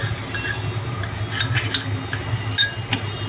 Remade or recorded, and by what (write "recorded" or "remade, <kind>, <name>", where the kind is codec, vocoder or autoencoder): recorded